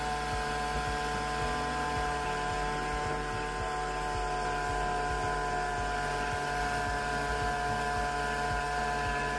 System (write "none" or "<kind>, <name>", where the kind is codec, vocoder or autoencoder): none